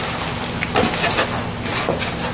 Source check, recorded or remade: recorded